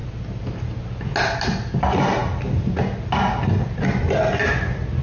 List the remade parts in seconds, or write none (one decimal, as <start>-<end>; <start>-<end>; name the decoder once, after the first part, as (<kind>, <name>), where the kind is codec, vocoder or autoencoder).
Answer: none